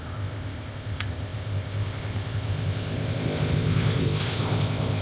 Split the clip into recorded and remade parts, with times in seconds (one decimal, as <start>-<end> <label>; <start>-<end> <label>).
0.0-5.0 remade